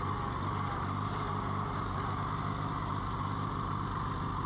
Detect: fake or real real